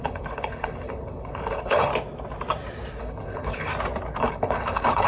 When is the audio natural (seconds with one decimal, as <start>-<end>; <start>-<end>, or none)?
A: 1.9-3.0; 3.7-4.2